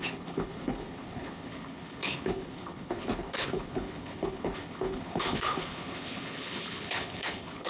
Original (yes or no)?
no